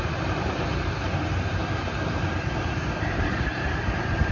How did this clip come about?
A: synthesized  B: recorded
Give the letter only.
A